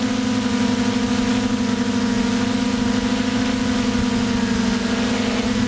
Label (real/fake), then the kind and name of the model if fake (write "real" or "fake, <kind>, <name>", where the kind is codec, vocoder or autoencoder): real